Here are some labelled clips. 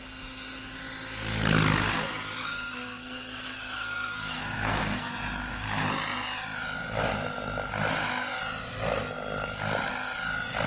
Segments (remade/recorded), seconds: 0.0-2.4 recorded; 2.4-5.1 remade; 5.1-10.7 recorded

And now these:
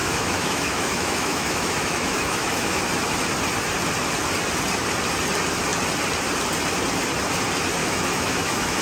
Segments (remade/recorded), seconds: 0.0-2.8 remade; 2.8-7.8 recorded; 7.8-8.8 remade

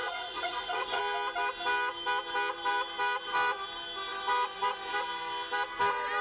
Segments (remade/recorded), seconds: 0.0-1.0 remade; 1.0-6.2 recorded

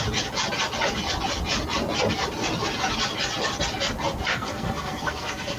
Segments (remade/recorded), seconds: 0.0-4.3 recorded; 4.3-5.6 remade

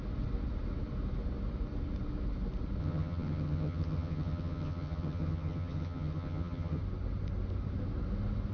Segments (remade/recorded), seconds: 0.0-2.8 recorded; 2.8-6.8 remade; 6.8-8.5 recorded

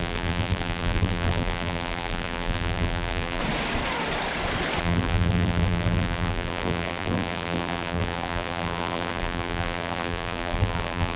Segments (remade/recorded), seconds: 0.0-3.4 remade; 3.4-4.8 recorded; 4.8-11.2 remade